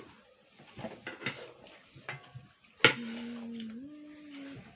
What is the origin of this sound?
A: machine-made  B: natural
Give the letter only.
B